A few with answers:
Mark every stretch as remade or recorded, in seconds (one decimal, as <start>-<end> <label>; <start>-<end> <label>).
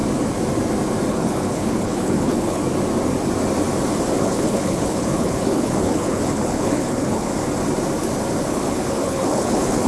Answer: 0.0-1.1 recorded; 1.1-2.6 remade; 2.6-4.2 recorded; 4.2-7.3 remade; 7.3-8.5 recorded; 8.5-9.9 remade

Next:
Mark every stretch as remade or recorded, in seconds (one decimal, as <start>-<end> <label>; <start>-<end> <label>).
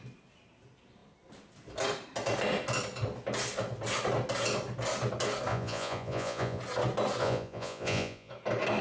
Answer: 0.0-5.5 recorded; 5.5-6.6 remade; 6.6-7.2 recorded; 7.2-8.3 remade; 8.3-8.8 recorded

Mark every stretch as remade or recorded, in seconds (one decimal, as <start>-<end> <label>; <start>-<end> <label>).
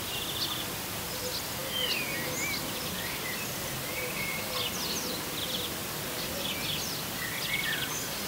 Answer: 0.0-8.3 recorded